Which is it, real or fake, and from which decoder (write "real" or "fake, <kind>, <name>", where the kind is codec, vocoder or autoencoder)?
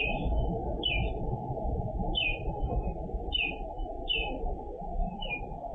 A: real